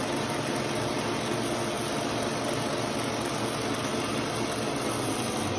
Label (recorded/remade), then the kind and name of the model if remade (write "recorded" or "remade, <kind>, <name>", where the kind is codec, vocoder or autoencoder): recorded